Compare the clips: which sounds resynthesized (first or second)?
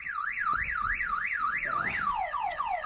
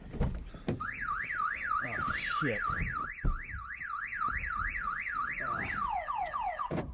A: first